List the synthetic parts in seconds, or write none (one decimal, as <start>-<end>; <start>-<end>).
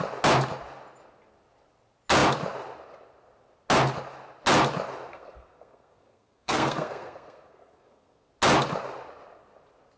5.1-8.3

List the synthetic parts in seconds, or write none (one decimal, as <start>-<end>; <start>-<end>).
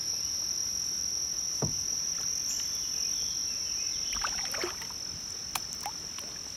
none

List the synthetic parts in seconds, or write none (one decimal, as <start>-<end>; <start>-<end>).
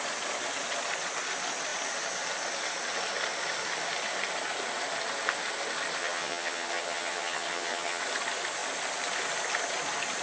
6.0-8.0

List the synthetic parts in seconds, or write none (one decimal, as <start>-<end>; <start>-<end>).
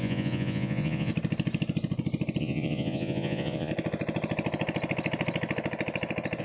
0.0-1.1; 2.4-3.7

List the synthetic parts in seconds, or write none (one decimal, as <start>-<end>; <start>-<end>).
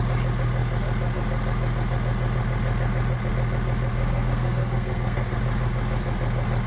3.9-5.4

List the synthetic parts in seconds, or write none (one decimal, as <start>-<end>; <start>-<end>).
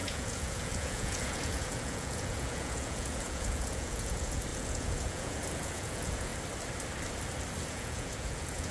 0.0-6.3; 7.7-8.7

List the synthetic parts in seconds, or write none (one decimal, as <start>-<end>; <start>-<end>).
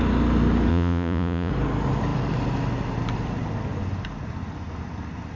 0.7-1.5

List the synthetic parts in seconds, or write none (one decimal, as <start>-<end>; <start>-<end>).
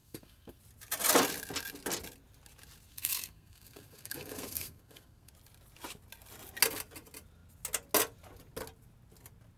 0.0-0.6; 2.9-5.3